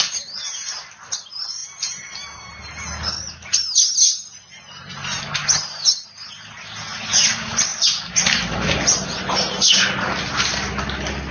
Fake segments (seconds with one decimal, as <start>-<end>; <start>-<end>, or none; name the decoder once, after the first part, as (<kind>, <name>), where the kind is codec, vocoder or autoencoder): none